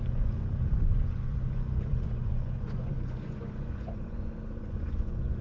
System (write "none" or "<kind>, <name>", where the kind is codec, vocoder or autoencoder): vocoder, Vocos